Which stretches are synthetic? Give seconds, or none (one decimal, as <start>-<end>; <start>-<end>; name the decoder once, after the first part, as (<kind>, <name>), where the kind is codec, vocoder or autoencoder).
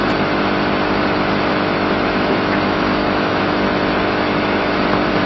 1.5-4.7 (autoencoder, DAC-VAE)